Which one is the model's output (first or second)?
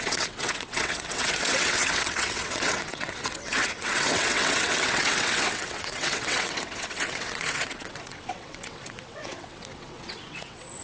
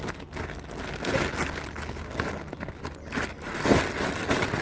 first